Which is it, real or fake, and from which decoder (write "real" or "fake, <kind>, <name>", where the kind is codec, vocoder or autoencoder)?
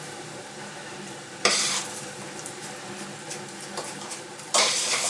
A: fake, vocoder, BigVGAN v2